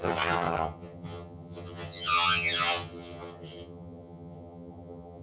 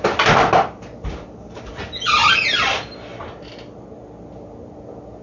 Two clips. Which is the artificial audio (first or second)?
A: first